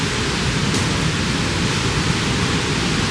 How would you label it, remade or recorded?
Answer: recorded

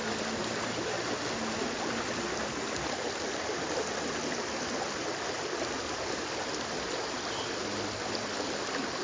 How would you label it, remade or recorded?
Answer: recorded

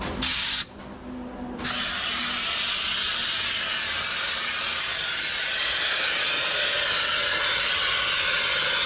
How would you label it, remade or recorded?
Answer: recorded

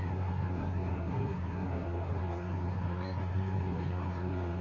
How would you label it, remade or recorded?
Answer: remade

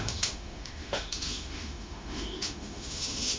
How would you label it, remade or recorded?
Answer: remade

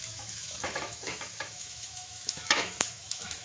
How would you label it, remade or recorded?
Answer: remade